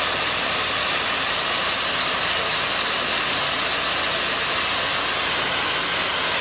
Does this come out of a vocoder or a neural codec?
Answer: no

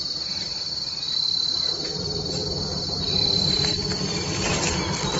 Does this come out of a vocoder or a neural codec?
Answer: no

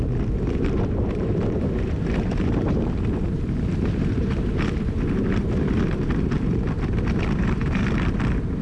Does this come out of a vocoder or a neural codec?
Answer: yes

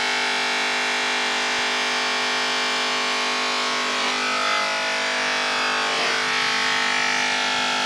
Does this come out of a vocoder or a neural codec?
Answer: no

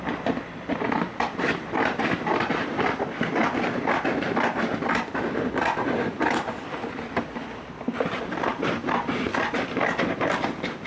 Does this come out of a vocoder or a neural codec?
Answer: yes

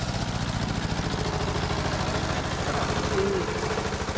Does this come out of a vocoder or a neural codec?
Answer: no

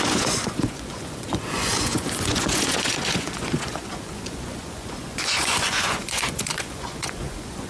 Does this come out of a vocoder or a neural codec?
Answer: yes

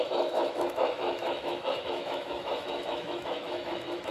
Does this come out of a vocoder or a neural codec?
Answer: yes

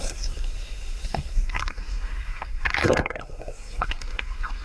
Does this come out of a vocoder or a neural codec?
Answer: yes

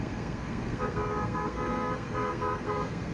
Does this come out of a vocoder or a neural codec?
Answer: yes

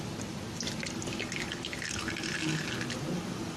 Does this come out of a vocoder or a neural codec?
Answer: no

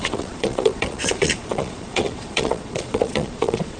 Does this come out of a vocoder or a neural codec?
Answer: yes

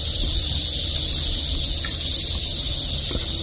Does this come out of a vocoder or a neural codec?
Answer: no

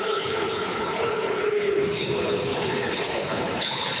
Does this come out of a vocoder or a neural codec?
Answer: yes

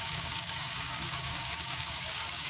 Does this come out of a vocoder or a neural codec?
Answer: yes